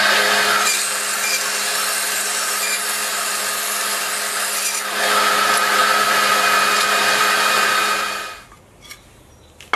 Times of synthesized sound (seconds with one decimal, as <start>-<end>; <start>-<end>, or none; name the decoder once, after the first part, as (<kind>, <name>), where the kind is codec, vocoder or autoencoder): none